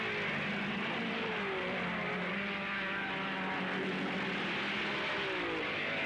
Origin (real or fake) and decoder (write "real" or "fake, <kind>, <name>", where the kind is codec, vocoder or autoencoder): real